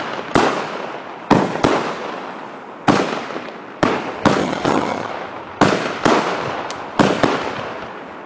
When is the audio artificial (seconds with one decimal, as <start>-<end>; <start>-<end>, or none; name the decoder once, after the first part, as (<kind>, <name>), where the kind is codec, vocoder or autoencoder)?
4.4-5.1 (vocoder, HiFi-GAN)